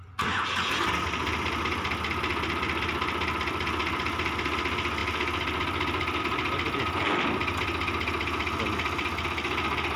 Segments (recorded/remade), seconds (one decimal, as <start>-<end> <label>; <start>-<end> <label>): 0.0-10.0 recorded